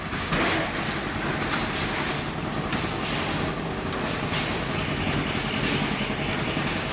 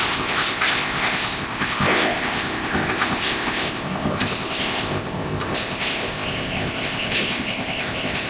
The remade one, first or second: second